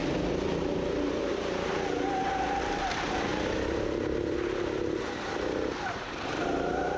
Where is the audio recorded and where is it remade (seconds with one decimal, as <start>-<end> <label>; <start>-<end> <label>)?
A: 0.0-0.6 recorded; 0.6-3.3 remade; 3.3-5.9 recorded; 5.9-7.0 remade

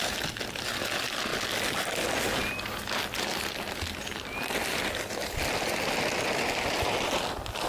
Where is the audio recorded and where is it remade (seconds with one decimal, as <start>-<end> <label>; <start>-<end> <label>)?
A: 0.0-7.7 recorded

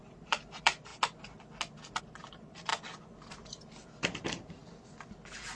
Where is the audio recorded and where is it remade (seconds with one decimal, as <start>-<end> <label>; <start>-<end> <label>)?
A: 0.0-0.9 remade; 0.9-2.0 recorded; 2.0-2.7 remade; 2.7-3.3 recorded; 3.3-4.6 remade; 4.6-5.6 recorded

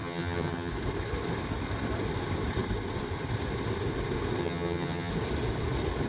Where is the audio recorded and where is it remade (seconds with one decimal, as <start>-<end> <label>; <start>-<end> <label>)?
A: 0.0-0.7 remade; 0.7-4.4 recorded; 4.4-5.1 remade; 5.1-6.1 recorded